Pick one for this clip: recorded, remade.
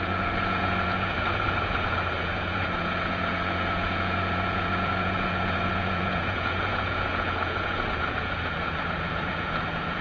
remade